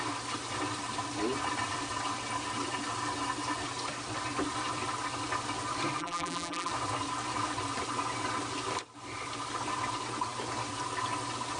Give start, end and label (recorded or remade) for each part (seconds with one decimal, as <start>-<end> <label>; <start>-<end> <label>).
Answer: 0.0-6.0 recorded; 6.0-6.7 remade; 6.7-11.6 recorded